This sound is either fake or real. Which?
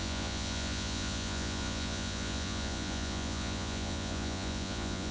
fake